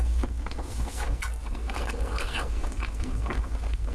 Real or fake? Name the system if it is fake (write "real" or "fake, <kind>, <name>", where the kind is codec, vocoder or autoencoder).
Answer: fake, codec, SNAC